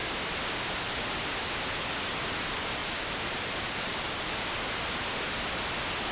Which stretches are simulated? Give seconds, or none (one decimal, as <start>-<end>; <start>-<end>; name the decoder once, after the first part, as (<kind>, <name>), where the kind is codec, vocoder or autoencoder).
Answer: 2.8-4.3 (vocoder, BigVGAN v2)